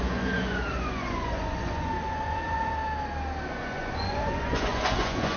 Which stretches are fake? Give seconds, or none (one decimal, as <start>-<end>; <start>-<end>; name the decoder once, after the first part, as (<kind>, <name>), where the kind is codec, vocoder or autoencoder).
0.0-2.8 (vocoder, Vocos); 3.5-5.4